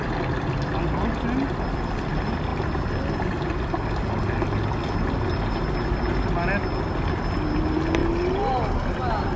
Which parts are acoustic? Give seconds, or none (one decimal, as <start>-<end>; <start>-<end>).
0.0-9.4